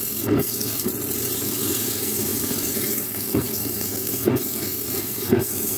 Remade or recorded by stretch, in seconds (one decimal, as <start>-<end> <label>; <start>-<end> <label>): 0.0-0.9 remade; 0.9-1.4 recorded; 1.4-5.8 remade